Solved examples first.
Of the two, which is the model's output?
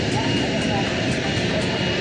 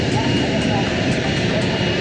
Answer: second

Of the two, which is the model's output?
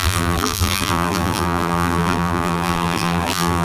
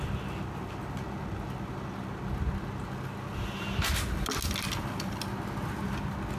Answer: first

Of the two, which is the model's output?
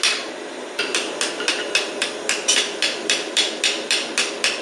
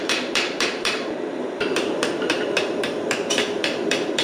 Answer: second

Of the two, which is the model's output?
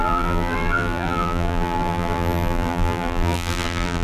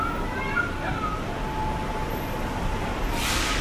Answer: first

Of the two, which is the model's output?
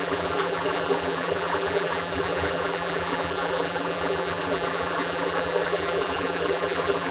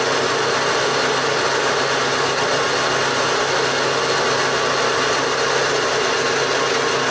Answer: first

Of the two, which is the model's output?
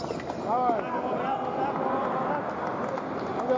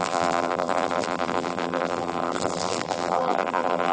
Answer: second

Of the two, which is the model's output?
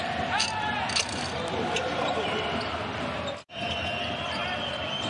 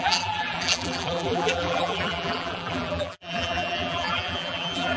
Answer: second